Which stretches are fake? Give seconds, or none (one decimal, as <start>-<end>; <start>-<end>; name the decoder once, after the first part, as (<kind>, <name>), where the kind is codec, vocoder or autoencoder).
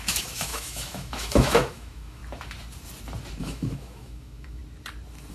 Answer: 0.0-2.2 (autoencoder, DAC-VAE); 3.4-4.6